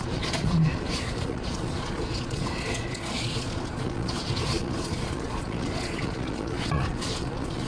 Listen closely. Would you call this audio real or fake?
fake